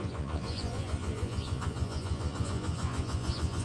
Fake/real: fake